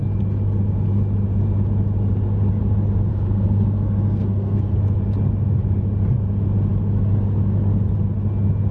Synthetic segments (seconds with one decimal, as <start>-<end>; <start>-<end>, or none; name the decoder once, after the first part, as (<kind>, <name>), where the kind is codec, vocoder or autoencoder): 3.1-4.7 (codec, SNAC)